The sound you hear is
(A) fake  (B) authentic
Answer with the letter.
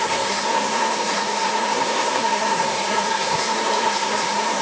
A